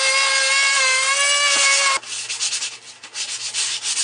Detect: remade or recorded recorded